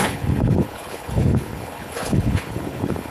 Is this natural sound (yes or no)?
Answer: no